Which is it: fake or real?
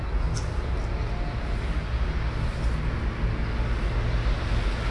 real